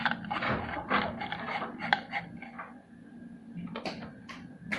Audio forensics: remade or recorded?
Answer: recorded